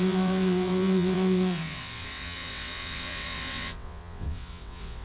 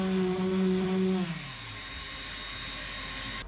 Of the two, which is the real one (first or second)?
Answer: second